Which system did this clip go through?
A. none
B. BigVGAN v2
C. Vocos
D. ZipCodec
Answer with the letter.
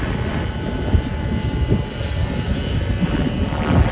A